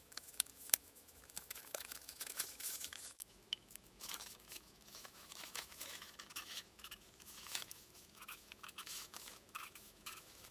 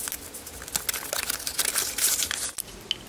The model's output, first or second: first